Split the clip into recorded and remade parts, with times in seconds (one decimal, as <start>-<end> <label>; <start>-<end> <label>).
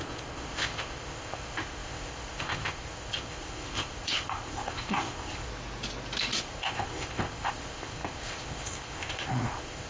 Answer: 0.0-5.5 remade; 5.5-6.4 recorded; 6.4-9.9 remade